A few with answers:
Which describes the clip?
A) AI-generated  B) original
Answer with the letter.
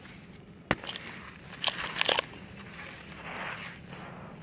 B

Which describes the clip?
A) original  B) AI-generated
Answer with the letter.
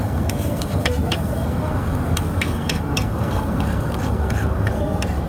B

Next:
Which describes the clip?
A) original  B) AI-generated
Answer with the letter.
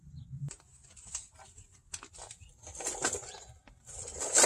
A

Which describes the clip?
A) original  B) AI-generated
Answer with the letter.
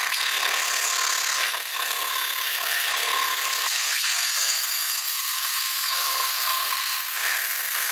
B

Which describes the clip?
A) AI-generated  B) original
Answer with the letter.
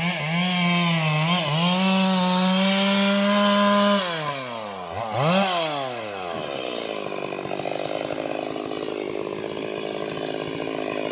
B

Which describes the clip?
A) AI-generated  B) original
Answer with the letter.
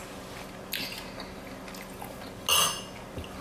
B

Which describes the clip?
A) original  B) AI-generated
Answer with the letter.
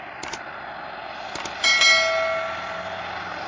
A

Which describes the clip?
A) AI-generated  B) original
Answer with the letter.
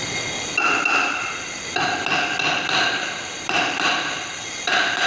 B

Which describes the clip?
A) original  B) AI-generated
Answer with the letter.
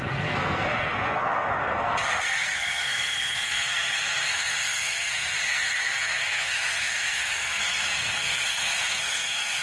B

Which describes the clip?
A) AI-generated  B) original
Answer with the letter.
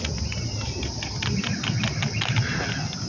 B